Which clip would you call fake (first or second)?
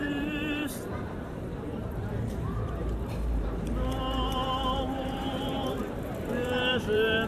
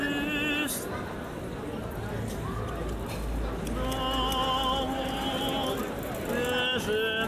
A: first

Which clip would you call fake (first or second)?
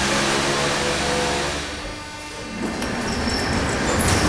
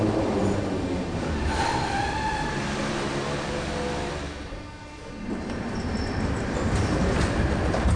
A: second